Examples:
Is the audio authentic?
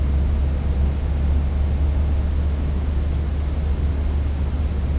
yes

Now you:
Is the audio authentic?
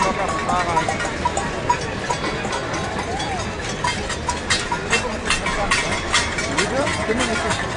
yes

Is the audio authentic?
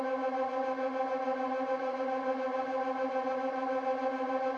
yes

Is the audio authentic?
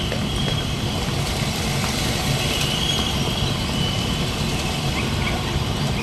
no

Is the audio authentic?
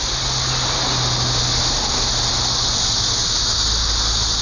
yes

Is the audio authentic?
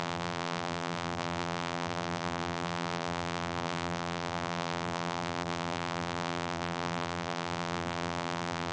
no